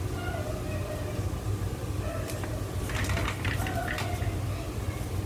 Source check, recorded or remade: recorded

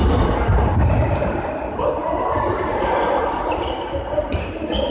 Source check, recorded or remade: recorded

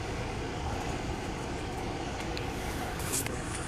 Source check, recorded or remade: remade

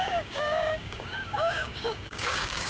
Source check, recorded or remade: remade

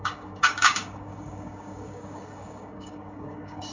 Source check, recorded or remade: remade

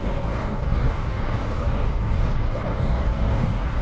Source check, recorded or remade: remade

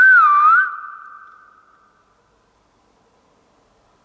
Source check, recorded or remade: recorded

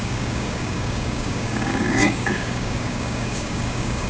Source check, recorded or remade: remade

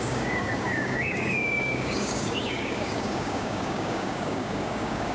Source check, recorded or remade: remade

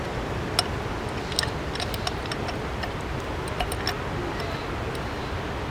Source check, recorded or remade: recorded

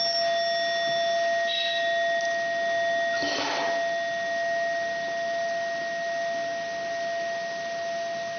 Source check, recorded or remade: recorded